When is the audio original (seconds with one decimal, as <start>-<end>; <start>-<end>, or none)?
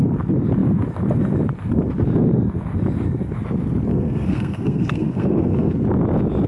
0.0-3.9; 5.7-6.5